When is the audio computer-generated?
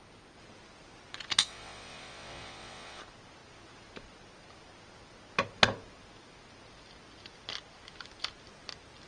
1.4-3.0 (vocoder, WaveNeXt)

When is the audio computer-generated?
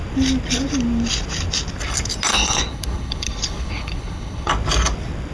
2.3-4.5 (codec, HILCodec)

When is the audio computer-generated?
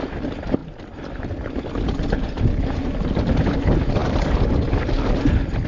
none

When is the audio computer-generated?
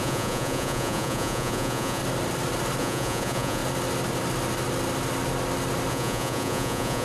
0.0-2.0 (vocoder, Vocos); 2.8-3.6; 5.9-7.0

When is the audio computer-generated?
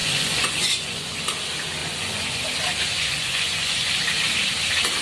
0.0-1.2 (vocoder, Vocos); 1.8-2.4; 2.9-3.9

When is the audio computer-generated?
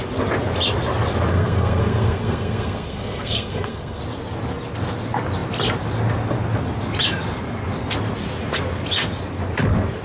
1.3-4.0 (codec, SNAC)